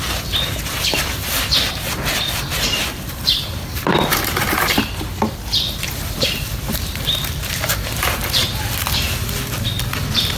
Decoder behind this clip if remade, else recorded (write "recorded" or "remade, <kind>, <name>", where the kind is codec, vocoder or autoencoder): remade, vocoder, BigVGAN v2